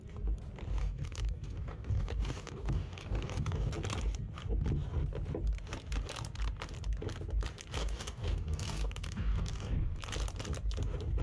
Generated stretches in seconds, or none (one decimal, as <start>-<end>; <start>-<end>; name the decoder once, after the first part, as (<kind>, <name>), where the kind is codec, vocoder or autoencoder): 0.8-3.7 (codec, DAC); 7.8-10.0